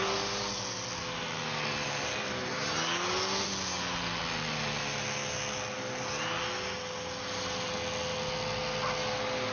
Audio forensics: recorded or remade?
recorded